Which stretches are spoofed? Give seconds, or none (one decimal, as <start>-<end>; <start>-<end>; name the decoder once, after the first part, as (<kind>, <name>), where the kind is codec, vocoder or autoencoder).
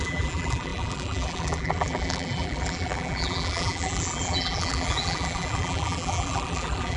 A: 0.0-7.0 (vocoder, BigVGAN v2)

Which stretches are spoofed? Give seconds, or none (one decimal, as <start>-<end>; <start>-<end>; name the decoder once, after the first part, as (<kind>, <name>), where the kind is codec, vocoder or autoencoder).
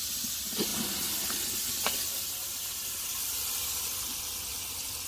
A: none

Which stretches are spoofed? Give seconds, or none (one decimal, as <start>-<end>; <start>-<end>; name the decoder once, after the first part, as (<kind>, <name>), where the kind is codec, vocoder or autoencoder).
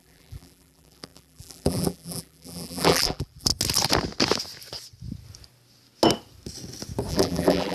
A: 0.0-3.5 (vocoder, BigVGAN v2); 7.1-7.7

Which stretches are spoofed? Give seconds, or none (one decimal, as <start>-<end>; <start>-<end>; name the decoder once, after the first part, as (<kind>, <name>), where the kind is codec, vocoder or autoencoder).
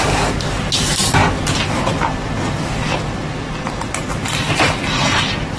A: 1.2-4.6 (vocoder, BigVGAN v2)